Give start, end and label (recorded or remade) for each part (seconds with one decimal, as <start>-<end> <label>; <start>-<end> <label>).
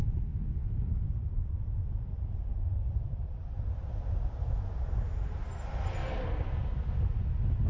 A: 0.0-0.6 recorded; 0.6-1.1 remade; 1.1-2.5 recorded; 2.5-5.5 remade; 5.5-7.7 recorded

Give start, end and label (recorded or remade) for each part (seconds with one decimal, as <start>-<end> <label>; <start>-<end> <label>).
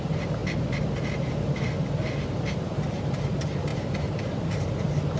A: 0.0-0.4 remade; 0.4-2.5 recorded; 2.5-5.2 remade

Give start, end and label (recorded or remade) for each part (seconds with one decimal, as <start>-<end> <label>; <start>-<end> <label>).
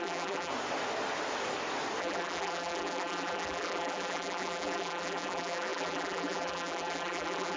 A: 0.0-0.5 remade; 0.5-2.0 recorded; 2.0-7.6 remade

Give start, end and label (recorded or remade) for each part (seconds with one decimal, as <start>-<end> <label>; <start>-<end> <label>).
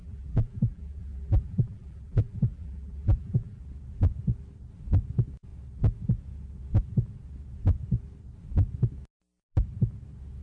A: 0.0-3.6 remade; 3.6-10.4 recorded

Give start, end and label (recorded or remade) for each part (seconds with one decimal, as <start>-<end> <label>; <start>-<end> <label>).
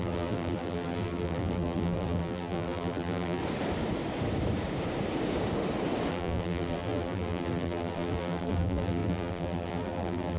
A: 0.0-3.4 remade; 3.4-6.1 recorded; 6.1-10.4 remade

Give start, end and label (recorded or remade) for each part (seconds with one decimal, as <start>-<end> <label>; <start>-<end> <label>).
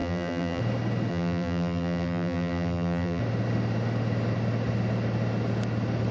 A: 0.0-0.6 remade; 0.6-1.1 recorded; 1.1-3.2 remade; 3.2-6.1 recorded